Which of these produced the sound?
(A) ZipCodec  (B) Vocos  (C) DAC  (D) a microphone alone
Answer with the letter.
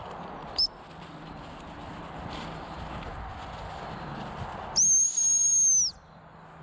D